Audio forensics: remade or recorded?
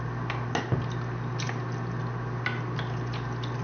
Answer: recorded